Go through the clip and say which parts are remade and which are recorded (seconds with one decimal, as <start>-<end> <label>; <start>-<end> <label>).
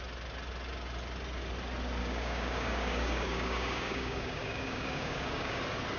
0.0-2.0 recorded; 2.0-5.6 remade; 5.6-6.0 recorded